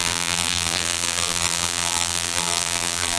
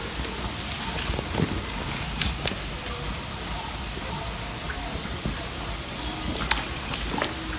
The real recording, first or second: second